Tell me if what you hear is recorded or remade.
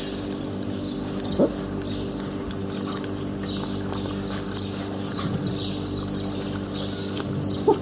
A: recorded